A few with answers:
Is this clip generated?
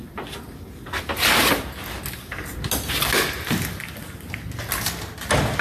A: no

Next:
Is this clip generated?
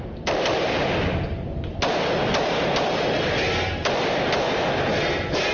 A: no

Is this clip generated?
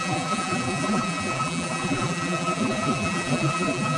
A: yes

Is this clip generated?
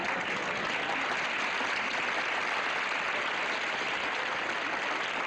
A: no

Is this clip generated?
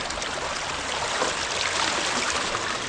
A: no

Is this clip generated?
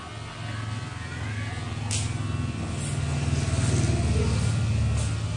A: no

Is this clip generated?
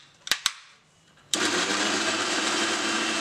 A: yes